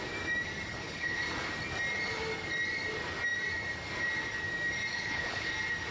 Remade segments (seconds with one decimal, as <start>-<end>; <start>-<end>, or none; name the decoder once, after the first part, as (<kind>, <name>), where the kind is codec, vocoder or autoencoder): 0.7-1.2 (codec, HILCodec); 4.9-5.5

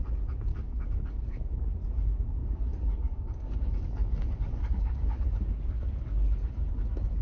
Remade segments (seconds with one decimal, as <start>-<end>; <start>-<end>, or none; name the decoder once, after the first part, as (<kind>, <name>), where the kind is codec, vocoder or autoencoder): 0.5-1.5 (codec, DAC); 2.4-6.7

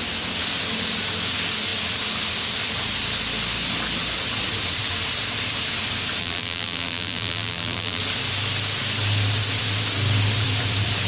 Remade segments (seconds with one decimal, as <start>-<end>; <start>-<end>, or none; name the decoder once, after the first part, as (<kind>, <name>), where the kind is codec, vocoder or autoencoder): 6.2-8.0 (vocoder, BigVGAN v2)

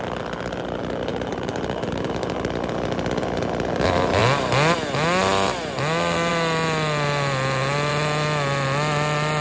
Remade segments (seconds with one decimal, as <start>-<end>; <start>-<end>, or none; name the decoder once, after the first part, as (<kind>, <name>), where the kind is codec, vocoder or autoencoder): 1.1-2.5 (vocoder, BigVGAN v2)

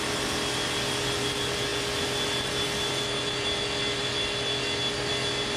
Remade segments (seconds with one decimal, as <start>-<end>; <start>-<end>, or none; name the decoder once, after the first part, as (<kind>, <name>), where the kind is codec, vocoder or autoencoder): none